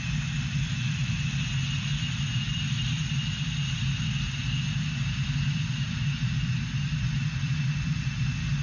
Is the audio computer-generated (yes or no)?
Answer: no